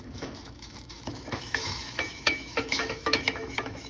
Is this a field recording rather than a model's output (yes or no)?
no